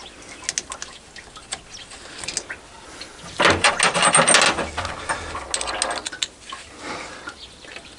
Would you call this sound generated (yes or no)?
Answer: no